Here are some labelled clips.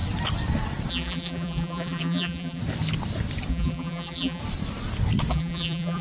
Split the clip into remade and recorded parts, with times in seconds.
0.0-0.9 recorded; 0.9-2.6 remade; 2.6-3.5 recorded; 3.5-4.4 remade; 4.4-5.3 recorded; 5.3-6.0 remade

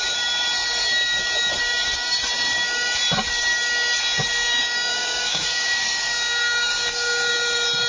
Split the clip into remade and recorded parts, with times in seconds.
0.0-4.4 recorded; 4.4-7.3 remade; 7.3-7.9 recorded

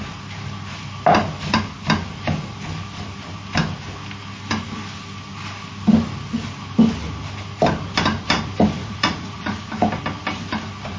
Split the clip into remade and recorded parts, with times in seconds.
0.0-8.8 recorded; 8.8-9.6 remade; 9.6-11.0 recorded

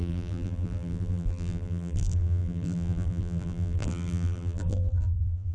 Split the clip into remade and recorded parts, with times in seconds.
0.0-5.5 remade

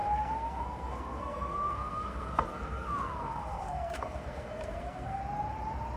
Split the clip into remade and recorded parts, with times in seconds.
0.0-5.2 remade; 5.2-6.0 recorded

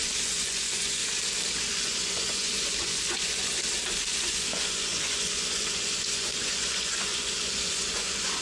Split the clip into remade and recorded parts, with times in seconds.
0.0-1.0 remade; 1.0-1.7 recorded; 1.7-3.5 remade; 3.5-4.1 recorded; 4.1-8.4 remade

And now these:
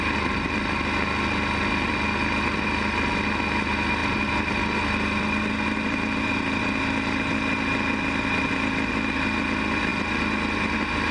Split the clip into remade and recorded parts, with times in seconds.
0.0-11.1 recorded

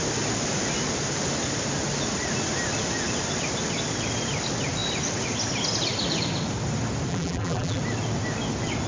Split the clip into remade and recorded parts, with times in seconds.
0.0-7.1 recorded; 7.1-7.8 remade; 7.8-8.9 recorded